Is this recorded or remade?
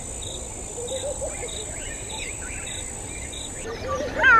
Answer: recorded